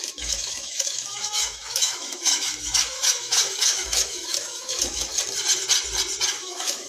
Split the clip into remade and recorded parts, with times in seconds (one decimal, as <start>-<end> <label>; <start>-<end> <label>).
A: 0.0-5.1 remade; 5.1-6.3 recorded; 6.3-6.9 remade